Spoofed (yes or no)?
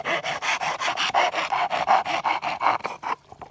no